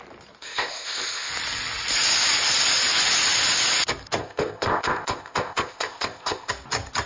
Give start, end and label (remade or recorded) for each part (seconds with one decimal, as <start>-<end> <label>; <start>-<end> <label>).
0.0-0.4 recorded; 0.4-1.3 remade; 1.3-4.2 recorded; 4.2-6.5 remade; 6.5-7.1 recorded